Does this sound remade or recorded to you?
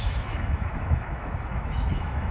remade